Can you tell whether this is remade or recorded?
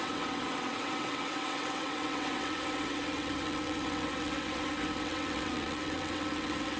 remade